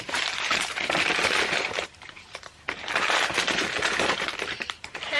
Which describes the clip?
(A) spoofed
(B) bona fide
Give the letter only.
A